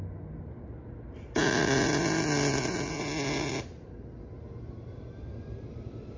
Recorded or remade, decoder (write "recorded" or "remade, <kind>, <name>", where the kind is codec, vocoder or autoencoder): recorded